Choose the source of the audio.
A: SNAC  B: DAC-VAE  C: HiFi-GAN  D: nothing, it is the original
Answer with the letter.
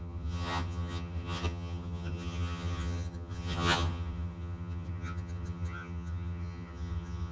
C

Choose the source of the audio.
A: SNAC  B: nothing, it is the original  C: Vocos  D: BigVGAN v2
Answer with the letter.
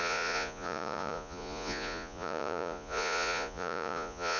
C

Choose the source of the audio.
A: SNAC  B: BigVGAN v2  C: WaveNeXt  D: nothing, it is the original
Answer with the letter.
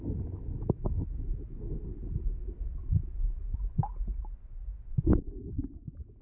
D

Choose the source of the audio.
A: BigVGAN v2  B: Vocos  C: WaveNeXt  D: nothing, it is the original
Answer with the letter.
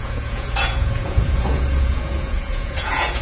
B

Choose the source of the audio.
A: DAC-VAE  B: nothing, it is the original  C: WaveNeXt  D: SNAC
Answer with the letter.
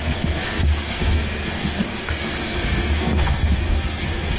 D